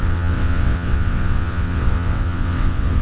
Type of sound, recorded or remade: remade